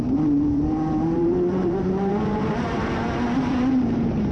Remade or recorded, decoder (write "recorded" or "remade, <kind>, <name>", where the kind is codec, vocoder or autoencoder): remade, vocoder, BigVGAN v2